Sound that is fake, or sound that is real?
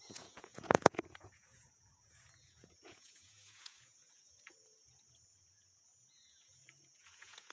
fake